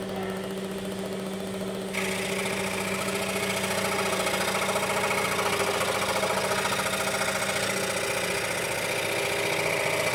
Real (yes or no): yes